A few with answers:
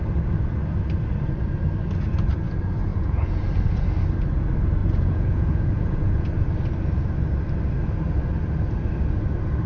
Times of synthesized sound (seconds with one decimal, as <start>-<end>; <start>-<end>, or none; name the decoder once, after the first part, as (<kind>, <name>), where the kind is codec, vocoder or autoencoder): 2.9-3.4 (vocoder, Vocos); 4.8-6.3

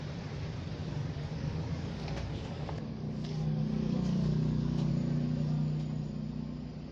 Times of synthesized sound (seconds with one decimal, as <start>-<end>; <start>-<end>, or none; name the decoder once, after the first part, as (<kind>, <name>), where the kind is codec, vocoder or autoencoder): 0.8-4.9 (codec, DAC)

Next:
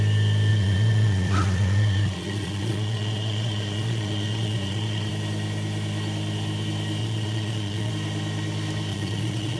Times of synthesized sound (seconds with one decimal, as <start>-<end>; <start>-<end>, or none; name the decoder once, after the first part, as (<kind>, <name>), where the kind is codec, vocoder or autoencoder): 0.5-5.1 (vocoder, Vocos); 7.0-7.9; 8.9-9.6

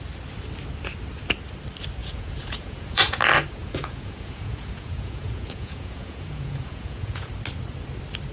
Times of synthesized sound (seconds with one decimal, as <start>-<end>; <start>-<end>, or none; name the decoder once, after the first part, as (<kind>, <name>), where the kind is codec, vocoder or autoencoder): 2.0-3.2 (vocoder, Vocos); 3.6-7.3

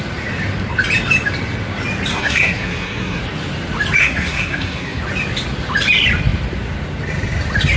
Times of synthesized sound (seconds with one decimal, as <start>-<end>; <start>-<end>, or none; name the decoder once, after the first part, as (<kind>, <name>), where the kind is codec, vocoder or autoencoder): 2.1-3.2 (codec, SNAC); 4.0-5.0

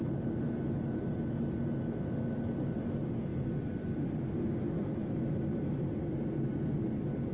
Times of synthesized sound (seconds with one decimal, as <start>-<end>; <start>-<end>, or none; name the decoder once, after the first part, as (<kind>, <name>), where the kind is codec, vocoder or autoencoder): 3.3-6.2 (vocoder, BigVGAN v2)

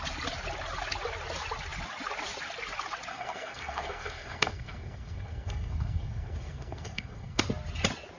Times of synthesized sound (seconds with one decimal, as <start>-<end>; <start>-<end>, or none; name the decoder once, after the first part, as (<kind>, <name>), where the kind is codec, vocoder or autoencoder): 3.1-7.4 (codec, SNAC)

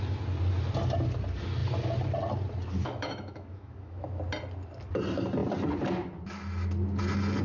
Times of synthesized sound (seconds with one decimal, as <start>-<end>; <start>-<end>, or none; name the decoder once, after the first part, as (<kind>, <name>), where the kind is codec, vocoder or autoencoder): 2.8-4.2 (autoencoder, DAC-VAE)